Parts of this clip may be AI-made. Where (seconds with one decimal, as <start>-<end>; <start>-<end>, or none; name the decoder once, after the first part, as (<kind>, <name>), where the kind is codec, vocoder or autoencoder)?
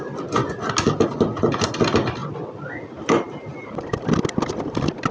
none